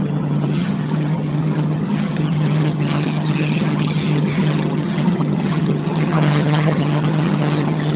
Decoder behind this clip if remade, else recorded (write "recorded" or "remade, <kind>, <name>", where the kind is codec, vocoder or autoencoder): remade, vocoder, HiFi-GAN